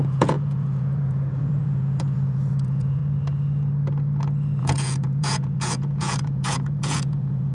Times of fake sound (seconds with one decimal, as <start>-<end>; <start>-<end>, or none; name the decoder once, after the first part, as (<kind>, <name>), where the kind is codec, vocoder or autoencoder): 0.0-3.0 (vocoder, Vocos); 4.6-7.5